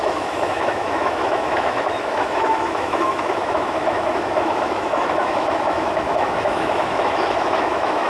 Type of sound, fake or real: fake